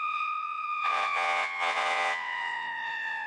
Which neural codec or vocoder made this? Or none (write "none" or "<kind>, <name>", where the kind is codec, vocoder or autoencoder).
vocoder, WaveNeXt